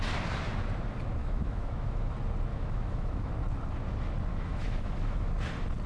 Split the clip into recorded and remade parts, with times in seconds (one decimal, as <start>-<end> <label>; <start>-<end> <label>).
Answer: 0.0-1.2 recorded; 1.2-2.1 remade; 2.1-2.5 recorded; 2.5-3.3 remade; 3.3-4.3 recorded; 4.3-5.3 remade; 5.3-5.9 recorded